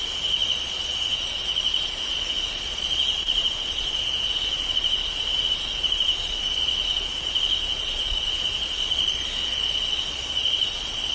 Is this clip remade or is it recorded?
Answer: remade